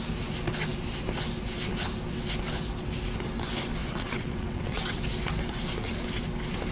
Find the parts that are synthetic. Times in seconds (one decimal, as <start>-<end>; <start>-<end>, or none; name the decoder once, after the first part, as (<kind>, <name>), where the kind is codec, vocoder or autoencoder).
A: 3.8-5.0 (vocoder, WaveNeXt)